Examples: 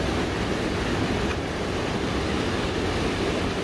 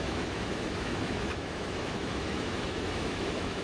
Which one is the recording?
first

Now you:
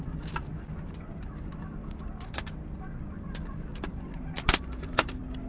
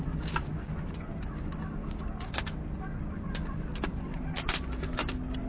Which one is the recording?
second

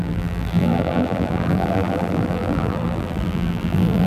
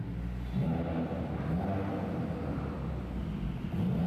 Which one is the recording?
second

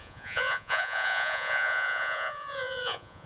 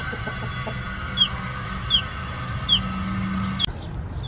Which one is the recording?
second